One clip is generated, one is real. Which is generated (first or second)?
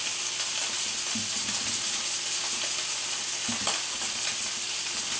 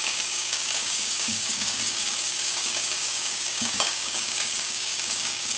second